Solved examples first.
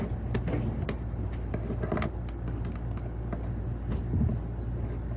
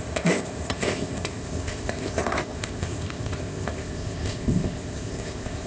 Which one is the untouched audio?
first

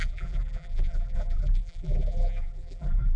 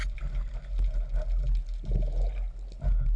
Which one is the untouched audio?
second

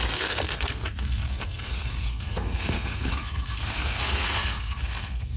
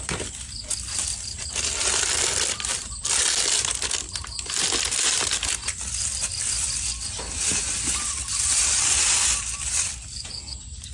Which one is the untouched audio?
second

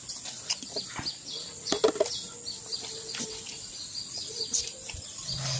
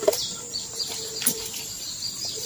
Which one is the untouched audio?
first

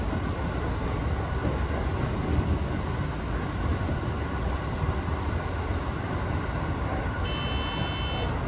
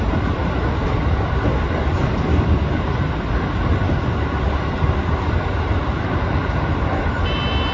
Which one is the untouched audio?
first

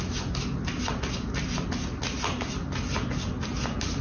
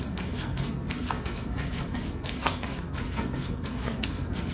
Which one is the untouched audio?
first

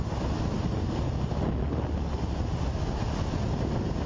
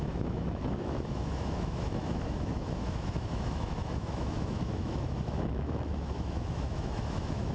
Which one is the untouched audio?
first